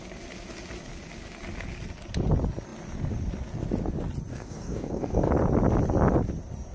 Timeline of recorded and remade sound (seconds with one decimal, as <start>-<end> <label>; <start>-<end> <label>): 0.0-4.3 recorded; 4.3-5.3 remade; 5.3-6.7 recorded